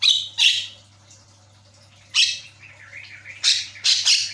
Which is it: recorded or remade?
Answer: remade